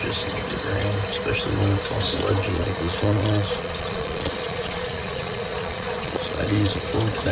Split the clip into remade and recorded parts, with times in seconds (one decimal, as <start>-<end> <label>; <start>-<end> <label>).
0.0-2.4 recorded; 2.4-6.8 remade; 6.8-7.3 recorded